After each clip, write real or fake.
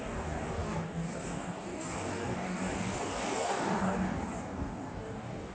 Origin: fake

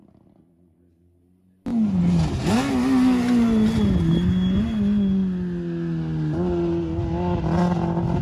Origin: real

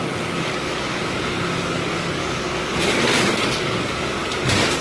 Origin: fake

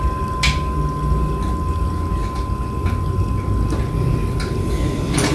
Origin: real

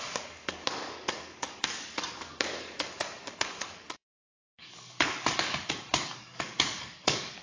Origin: fake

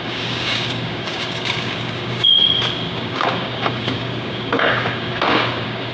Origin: fake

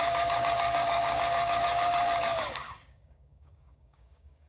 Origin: fake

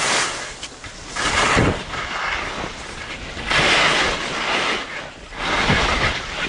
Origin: real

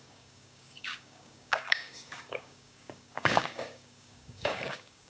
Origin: fake